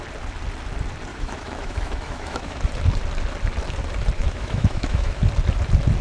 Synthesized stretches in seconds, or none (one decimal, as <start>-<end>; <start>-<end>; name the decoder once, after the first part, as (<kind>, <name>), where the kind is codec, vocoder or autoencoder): 1.1-2.6 (autoencoder, DAC-VAE); 4.2-5.2